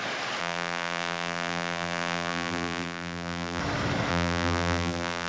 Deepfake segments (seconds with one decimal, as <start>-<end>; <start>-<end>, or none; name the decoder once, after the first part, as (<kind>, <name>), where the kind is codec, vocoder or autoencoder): 0.4-3.6 (vocoder, BigVGAN v2); 4.1-5.3